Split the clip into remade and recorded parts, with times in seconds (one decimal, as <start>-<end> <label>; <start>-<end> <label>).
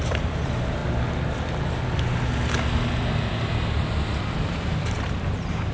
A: 0.0-0.8 remade; 0.8-4.2 recorded; 4.2-5.7 remade